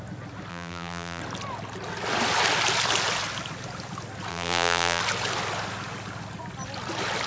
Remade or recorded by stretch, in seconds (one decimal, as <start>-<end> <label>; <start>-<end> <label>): 0.0-0.5 recorded; 0.5-1.2 remade; 1.2-4.3 recorded; 4.3-5.0 remade; 5.0-7.3 recorded